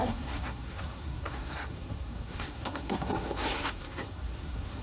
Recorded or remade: remade